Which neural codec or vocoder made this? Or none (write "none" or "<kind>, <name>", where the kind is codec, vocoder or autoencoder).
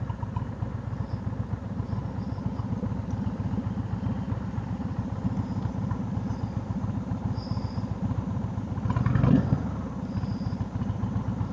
none